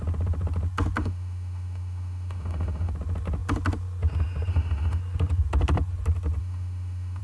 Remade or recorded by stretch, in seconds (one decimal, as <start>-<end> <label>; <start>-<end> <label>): 0.0-1.0 recorded; 1.0-2.9 remade; 2.9-4.5 recorded; 4.5-5.0 remade; 5.0-6.4 recorded; 6.4-7.2 remade